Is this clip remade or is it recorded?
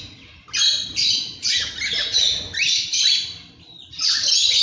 recorded